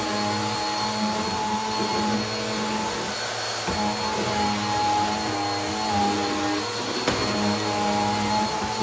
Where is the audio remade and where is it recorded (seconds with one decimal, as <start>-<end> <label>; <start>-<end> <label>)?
0.0-8.8 recorded